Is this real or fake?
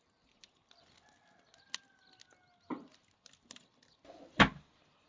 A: real